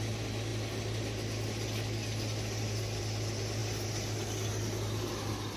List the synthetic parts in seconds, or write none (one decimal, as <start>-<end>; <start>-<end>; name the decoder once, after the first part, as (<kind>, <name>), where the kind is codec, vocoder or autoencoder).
none